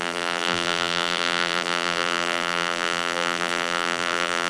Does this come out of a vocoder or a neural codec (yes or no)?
yes